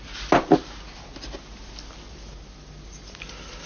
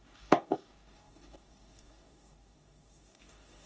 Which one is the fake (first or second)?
second